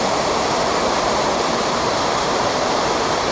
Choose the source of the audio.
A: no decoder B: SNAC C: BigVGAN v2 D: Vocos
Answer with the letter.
C